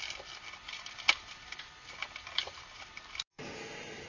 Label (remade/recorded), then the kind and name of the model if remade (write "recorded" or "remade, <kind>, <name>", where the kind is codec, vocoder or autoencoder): recorded